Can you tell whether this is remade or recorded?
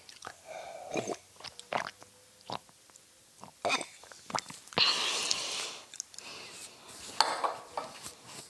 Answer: recorded